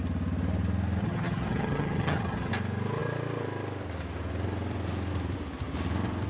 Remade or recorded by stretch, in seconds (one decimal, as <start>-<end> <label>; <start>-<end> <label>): 0.0-1.0 recorded; 1.0-2.5 remade; 2.5-6.3 recorded